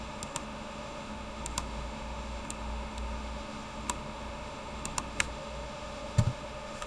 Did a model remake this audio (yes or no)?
yes